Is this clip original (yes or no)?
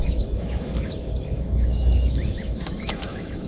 no